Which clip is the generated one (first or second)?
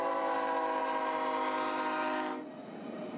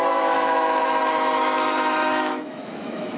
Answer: second